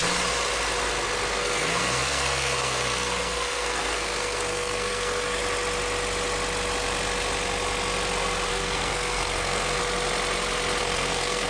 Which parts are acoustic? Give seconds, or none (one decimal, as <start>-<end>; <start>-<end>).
0.0-1.3; 5.4-8.5; 9.8-10.8